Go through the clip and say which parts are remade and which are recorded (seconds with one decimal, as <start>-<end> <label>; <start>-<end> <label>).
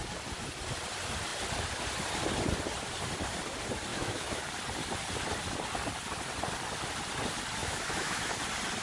0.0-3.9 recorded; 3.9-4.4 remade; 4.4-7.6 recorded; 7.6-8.3 remade; 8.3-8.8 recorded